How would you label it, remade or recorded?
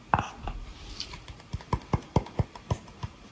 recorded